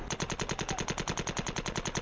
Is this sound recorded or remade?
recorded